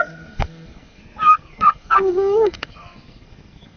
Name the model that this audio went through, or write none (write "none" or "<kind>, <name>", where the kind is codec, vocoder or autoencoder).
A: codec, SNAC